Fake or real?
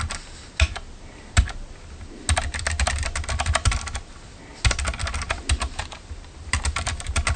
real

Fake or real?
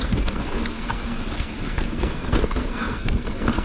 fake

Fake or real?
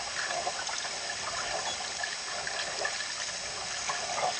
real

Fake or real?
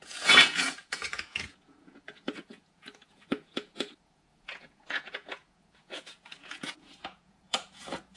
fake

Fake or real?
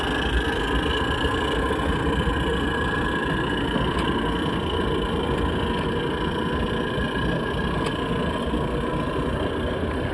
real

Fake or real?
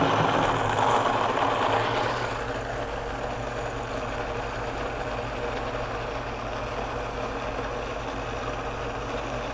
real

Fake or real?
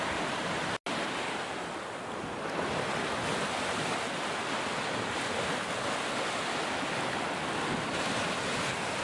real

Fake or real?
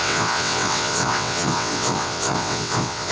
fake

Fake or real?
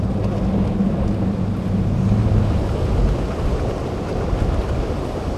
real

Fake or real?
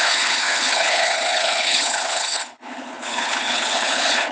fake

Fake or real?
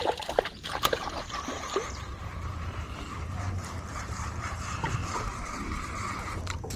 fake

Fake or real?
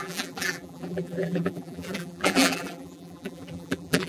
fake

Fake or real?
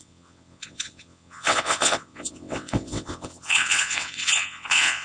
fake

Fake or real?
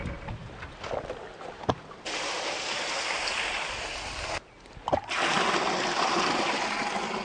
real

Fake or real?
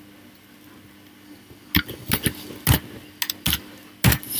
real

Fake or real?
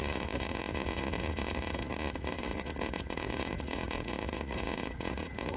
fake